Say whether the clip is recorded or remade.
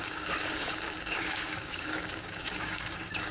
remade